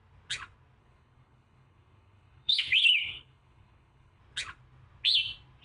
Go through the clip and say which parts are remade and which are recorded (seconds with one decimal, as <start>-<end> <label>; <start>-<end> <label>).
0.0-0.8 recorded; 0.8-4.2 remade; 4.2-5.6 recorded